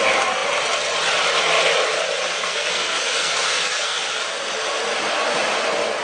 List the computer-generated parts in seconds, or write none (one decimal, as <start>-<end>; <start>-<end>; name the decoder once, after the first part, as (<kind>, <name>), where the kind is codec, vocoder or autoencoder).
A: 2.4-4.0 (codec, SNAC)